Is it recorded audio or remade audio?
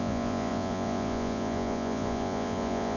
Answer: remade